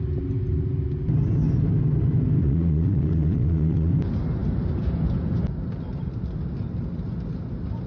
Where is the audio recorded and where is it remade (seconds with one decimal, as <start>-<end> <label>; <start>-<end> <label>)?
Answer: 0.0-2.4 recorded; 2.4-3.9 remade; 3.9-7.9 recorded